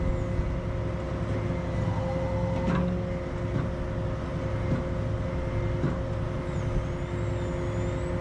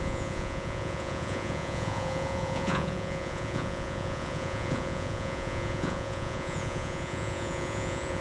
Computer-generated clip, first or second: second